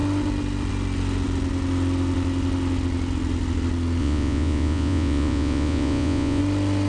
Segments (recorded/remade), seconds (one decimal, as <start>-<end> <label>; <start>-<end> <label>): 0.0-4.0 recorded; 4.0-6.4 remade; 6.4-6.9 recorded